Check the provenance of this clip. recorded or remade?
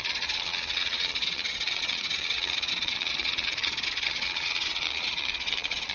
remade